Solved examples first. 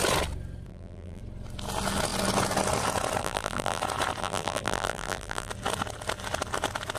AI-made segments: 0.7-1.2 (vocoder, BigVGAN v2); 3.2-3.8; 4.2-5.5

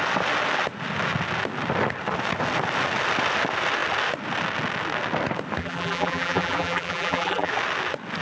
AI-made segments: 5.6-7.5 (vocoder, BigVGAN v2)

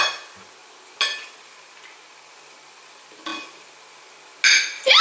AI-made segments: none